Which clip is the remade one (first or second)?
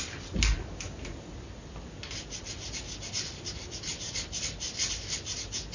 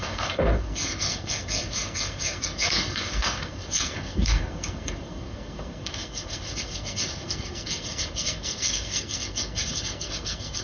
second